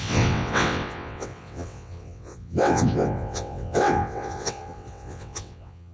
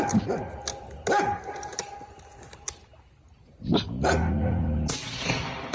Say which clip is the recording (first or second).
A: second